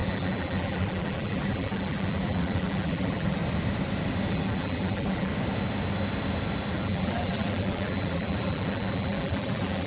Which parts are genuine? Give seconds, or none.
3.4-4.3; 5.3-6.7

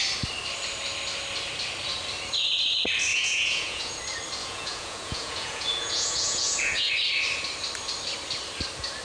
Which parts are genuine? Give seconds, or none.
0.0-3.1; 4.0-4.4; 6.9-9.0

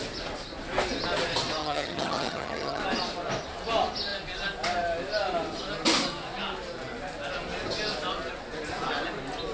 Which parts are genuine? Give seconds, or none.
0.0-1.6; 2.8-9.5